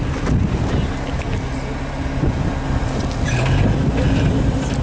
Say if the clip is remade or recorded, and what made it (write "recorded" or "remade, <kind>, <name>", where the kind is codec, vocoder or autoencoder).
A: recorded